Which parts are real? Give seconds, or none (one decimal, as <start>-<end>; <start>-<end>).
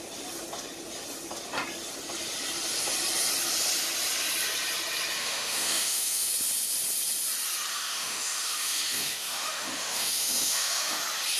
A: 0.0-5.2; 6.3-7.7; 11.0-11.4